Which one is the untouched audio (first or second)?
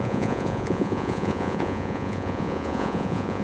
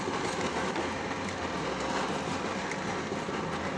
second